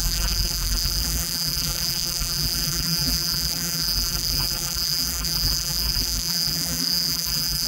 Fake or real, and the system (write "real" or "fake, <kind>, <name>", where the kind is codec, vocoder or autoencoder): fake, vocoder, BigVGAN v2